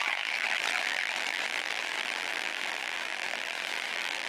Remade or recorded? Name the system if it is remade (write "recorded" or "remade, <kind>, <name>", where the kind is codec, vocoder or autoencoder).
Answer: remade, vocoder, BigVGAN v2